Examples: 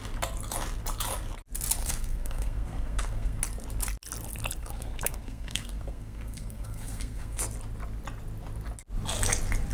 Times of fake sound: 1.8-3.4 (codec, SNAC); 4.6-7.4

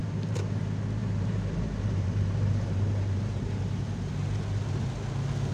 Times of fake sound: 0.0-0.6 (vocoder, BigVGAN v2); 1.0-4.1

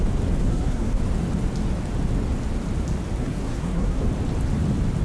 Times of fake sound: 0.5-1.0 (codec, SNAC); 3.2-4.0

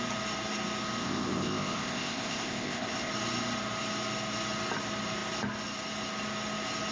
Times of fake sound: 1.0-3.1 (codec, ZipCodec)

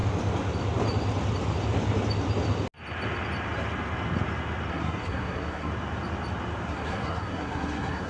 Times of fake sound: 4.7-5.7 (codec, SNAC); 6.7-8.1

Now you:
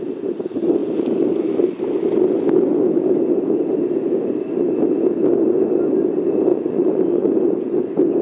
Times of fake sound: 6.5-7.3 (vocoder, Vocos)

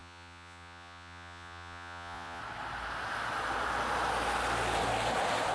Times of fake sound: 0.0-2.4 (vocoder, Vocos)